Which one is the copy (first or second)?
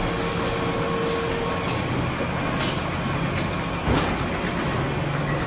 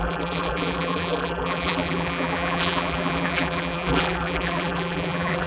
second